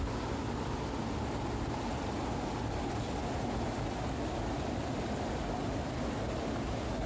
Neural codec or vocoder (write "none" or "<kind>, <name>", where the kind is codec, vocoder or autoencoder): none